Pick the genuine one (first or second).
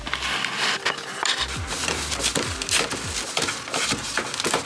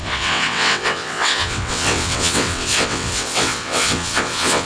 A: first